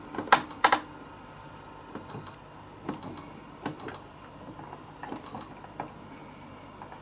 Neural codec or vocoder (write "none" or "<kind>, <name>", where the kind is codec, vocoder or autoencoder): none